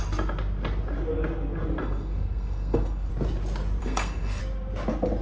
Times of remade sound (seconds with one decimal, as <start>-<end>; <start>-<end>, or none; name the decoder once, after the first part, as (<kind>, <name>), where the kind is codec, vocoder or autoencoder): 1.8-3.1 (codec, SNAC); 3.8-4.4